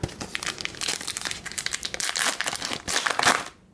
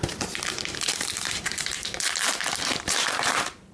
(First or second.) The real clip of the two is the first